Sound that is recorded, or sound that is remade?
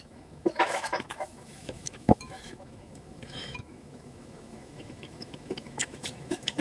remade